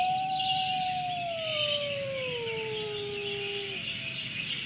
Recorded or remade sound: recorded